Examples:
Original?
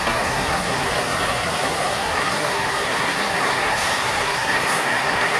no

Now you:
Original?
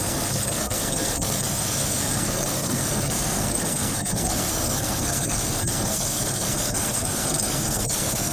no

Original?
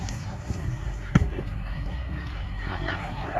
no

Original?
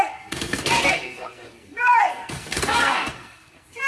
no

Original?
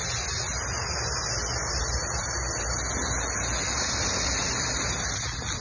yes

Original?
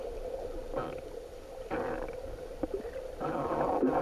yes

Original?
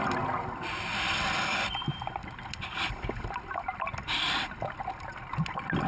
yes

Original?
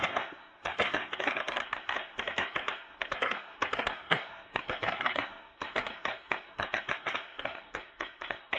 no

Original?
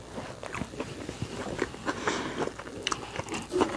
yes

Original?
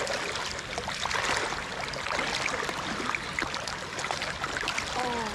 yes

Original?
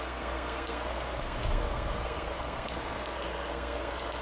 no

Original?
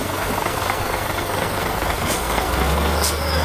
no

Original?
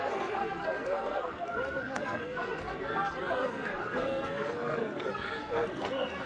no